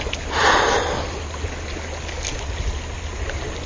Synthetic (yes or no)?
no